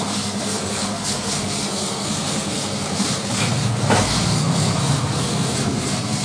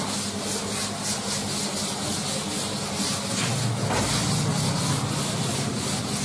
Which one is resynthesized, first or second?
first